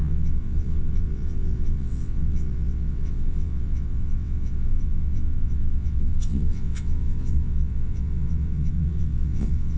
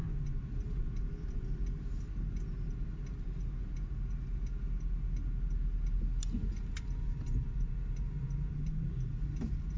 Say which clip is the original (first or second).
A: second